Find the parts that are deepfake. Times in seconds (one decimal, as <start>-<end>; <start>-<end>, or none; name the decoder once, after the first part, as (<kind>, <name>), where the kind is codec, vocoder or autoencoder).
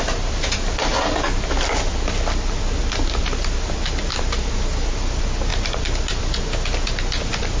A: none